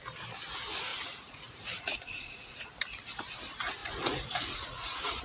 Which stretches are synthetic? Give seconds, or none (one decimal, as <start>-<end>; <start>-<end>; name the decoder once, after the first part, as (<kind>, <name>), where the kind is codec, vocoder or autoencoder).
0.9-2.7 (vocoder, Vocos); 3.8-5.2